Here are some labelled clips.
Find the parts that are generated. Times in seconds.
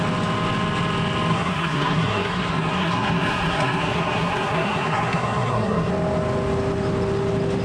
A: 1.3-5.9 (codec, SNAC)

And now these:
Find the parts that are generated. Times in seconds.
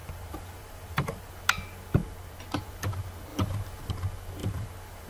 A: 0.0-1.3 (vocoder, BigVGAN v2); 4.4-5.1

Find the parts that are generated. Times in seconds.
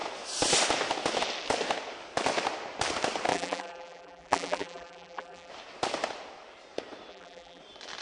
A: 3.3-5.5 (vocoder, BigVGAN v2); 7.1-7.6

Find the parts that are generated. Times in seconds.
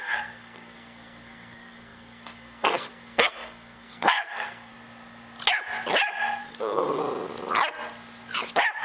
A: 0.0-4.7 (codec, SNAC); 6.4-7.0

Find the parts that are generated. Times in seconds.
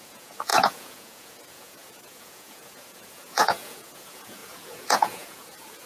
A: 0.0-5.9 (vocoder, Vocos)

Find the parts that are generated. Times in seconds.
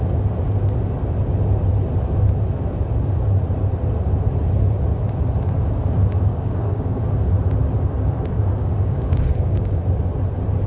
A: 6.3-7.0 (codec, DAC); 8.6-9.8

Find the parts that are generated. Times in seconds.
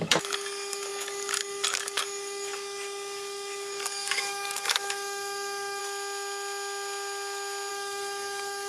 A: 0.0-5.8 (codec, DAC); 7.7-8.7